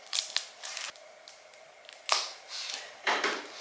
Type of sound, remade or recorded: recorded